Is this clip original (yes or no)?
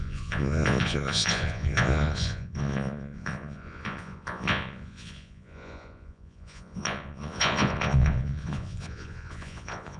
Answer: no